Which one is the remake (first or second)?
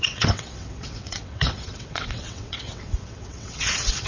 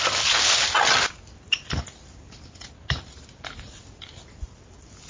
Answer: first